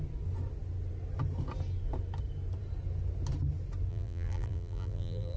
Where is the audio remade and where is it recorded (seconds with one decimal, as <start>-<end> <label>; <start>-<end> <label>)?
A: 0.0-3.9 recorded; 3.9-5.4 remade